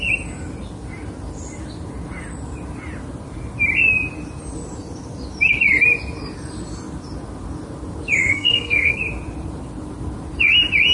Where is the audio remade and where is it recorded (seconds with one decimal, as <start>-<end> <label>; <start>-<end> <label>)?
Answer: 0.0-8.2 recorded; 8.2-9.0 remade; 9.0-10.9 recorded